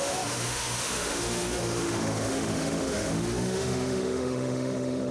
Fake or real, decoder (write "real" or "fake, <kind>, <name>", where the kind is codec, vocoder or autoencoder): fake, autoencoder, DAC-VAE